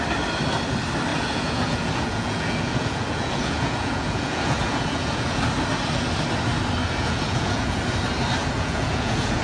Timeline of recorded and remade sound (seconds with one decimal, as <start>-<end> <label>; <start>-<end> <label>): 0.0-1.1 recorded; 1.1-5.4 remade; 5.4-6.8 recorded; 6.8-7.8 remade; 7.8-8.4 recorded; 8.4-9.4 remade